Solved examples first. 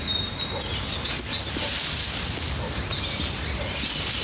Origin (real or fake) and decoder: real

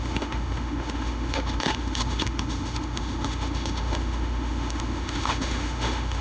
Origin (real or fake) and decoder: fake, autoencoder, DAC-VAE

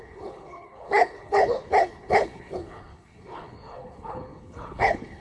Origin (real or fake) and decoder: fake, codec, HILCodec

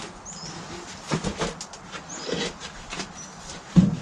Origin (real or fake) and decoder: real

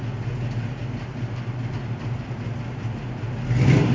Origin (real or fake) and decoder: real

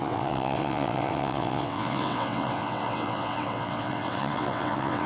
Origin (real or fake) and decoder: fake, vocoder, WaveNeXt